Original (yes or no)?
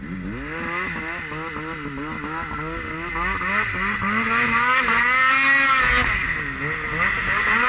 yes